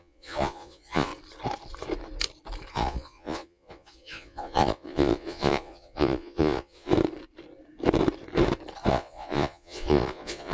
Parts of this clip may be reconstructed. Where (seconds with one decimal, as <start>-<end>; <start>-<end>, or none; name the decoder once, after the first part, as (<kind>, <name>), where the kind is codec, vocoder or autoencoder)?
0.0-1.1 (vocoder, Vocos); 2.7-6.9; 8.9-10.5

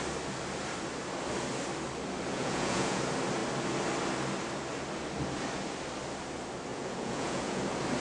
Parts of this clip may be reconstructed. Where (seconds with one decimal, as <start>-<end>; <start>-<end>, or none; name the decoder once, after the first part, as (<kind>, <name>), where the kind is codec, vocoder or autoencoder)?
2.3-3.0 (vocoder, Vocos); 6.7-7.6

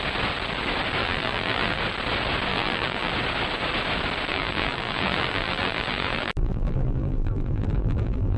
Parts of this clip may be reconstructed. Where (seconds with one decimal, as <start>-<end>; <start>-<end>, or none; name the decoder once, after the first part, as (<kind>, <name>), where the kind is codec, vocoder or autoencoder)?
1.0-1.8 (vocoder, BigVGAN v2); 2.5-3.1; 4.3-8.4